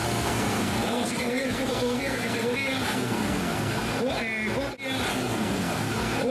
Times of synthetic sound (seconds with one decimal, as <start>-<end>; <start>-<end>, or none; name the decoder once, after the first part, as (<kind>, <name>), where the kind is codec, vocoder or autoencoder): 0.0-3.8 (codec, SNAC); 5.1-6.3